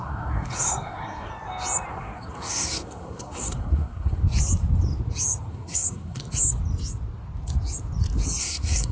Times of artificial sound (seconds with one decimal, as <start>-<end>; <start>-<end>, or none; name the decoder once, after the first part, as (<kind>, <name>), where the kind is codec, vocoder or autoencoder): 0.0-1.3 (codec, SNAC); 1.9-4.2; 5.5-6.2; 8.4-8.9